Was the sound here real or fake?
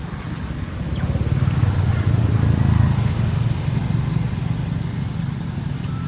real